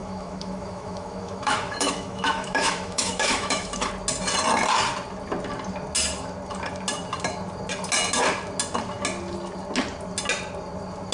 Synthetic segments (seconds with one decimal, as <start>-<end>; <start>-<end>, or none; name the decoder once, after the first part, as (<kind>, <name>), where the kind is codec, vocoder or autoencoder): 0.0-3.9 (autoencoder, DAC-VAE)